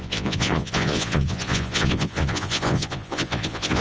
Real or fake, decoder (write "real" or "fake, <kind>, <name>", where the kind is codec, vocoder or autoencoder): fake, vocoder, Vocos